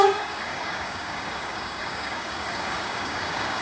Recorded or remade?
remade